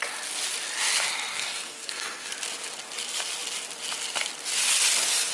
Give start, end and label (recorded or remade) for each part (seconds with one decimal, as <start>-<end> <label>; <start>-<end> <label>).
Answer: 0.0-1.3 recorded; 1.3-2.3 remade; 2.3-5.3 recorded